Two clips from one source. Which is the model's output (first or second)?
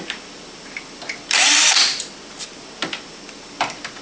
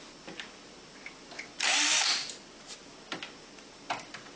first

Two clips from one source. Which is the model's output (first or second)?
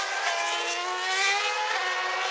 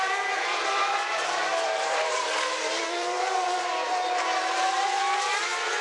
second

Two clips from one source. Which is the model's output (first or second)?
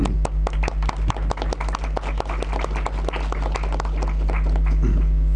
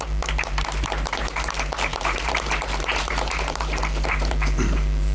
second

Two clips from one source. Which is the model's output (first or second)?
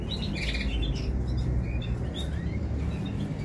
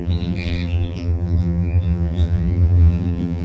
second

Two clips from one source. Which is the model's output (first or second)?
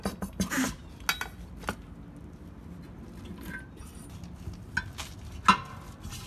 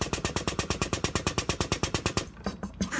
second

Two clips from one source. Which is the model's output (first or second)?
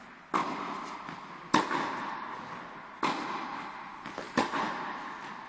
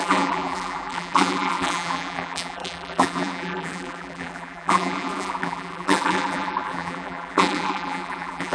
second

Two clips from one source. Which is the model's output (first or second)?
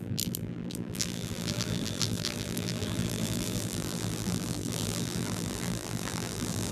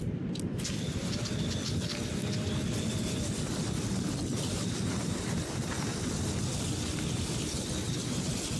first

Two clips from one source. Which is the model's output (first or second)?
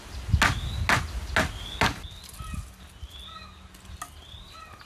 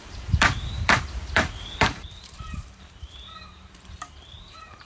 second